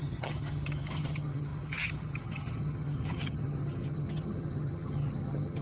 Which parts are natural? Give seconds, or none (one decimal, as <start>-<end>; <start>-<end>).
none